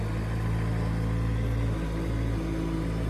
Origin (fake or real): real